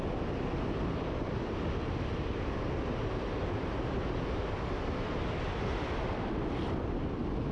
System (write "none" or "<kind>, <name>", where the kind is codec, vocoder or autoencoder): none